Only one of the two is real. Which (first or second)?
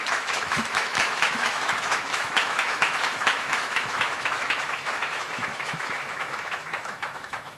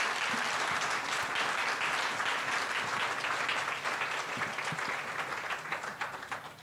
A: second